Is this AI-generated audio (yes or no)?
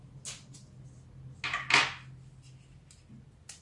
no